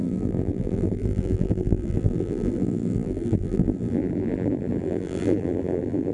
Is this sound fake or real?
fake